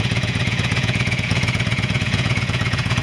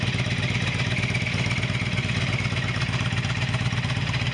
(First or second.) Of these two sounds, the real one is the second